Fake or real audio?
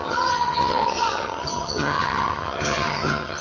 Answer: fake